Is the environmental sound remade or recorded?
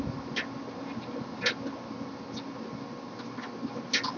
recorded